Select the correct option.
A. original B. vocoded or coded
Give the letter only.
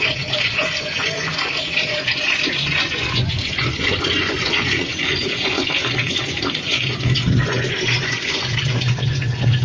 B